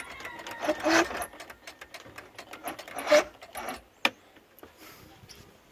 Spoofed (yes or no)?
no